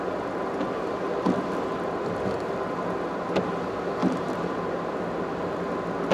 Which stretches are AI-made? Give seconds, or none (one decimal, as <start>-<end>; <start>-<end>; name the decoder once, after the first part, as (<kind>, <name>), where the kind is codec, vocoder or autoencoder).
4.0-4.7 (vocoder, BigVGAN v2)